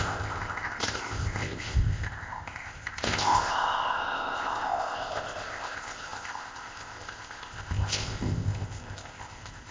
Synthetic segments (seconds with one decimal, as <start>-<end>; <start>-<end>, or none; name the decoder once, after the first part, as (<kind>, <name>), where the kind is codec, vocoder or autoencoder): 0.0-9.7 (codec, ZipCodec)

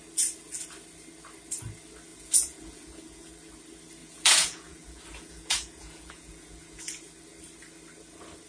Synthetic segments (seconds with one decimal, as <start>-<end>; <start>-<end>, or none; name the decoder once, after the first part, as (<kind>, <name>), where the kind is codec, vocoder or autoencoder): 2.1-3.3 (vocoder, Vocos); 4.0-6.8

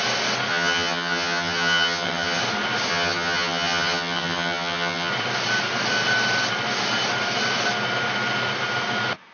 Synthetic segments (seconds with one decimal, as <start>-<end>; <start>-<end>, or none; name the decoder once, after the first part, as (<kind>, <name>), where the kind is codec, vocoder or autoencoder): 0.5-2.4 (vocoder, HiFi-GAN); 2.9-5.1

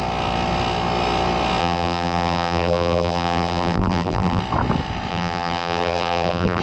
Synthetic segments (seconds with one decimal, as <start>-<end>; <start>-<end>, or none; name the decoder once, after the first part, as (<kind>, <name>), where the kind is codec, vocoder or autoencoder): 1.6-4.4 (vocoder, BigVGAN v2); 5.1-6.6